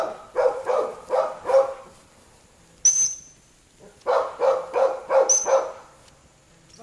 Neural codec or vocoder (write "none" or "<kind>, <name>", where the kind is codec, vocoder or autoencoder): none